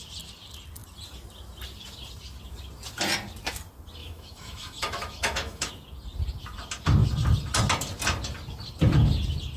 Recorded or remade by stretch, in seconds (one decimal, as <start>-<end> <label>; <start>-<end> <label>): 0.0-4.0 recorded; 4.0-5.7 remade; 5.7-9.6 recorded